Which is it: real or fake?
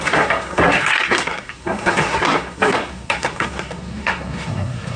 fake